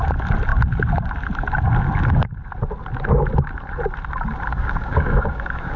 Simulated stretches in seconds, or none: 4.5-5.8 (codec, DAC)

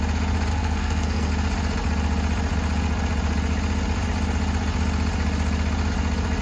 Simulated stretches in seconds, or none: 0.5-1.3 (codec, SNAC)